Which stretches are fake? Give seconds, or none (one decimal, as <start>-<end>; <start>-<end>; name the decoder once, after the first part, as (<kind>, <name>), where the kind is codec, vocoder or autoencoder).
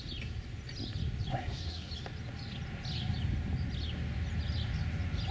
1.3-1.9 (codec, SNAC)